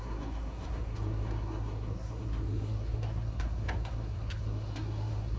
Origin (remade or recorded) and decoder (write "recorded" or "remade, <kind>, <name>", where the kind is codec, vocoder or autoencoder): remade, codec, SNAC